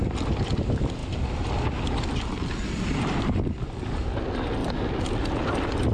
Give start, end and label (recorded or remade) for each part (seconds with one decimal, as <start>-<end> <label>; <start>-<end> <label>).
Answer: 0.0-5.9 recorded